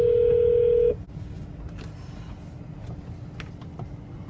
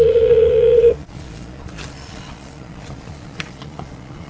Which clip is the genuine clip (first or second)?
first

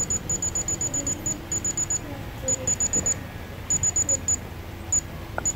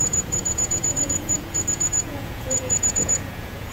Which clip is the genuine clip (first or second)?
first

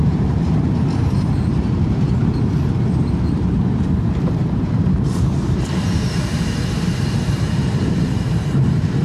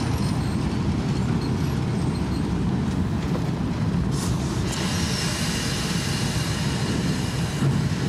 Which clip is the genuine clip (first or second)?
second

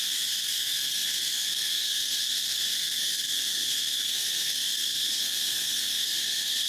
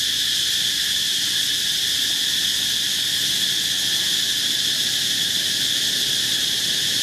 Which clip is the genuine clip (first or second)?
second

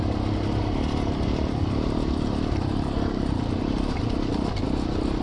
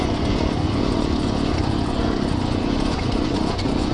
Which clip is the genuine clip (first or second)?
first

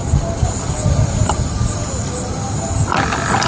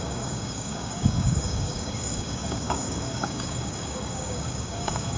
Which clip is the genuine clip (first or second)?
first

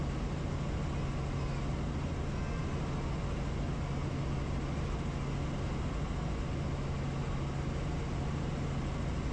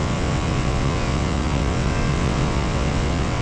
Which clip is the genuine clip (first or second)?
first